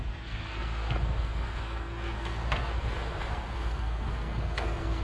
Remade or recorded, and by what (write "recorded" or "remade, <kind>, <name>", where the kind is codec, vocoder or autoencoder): remade, codec, SNAC